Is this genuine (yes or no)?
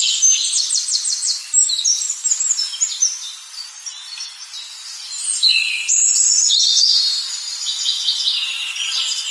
yes